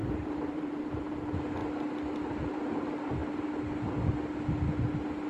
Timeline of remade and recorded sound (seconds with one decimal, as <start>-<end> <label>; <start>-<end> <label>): 0.0-1.0 remade; 1.0-5.3 recorded